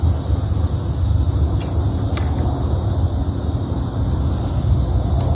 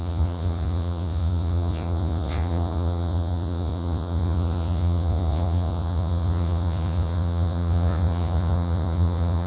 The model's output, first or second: second